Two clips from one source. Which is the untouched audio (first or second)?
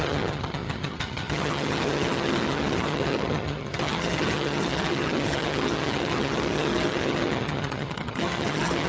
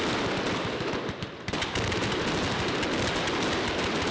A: second